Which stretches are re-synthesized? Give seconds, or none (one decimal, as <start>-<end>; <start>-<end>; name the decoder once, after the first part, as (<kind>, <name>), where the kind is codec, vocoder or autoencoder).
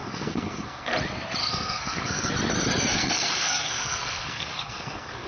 0.0-0.9 (codec, SNAC); 1.4-2.3; 2.9-5.3